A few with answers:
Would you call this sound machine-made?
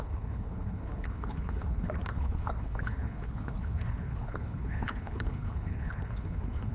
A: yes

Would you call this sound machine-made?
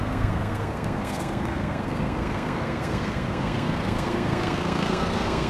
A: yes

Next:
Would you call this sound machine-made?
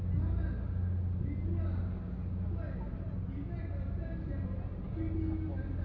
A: no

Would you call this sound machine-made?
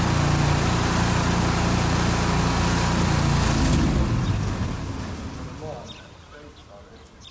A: no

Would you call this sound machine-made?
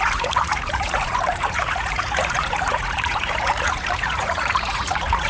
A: yes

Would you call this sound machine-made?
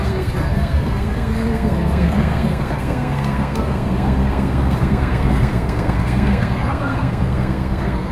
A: yes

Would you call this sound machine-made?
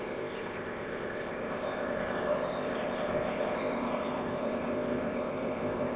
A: yes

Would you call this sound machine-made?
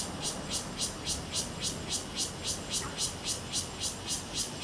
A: no